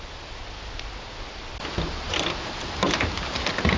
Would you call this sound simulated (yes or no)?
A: no